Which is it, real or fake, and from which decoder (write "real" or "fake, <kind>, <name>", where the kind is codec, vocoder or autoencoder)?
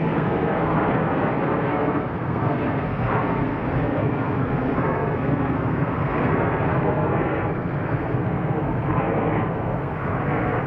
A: fake, codec, SNAC